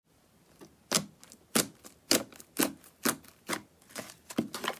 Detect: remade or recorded recorded